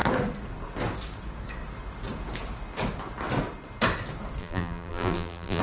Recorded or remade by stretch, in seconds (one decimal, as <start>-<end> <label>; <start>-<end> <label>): 0.0-4.4 recorded; 4.4-5.6 remade